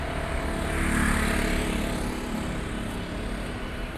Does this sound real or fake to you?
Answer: real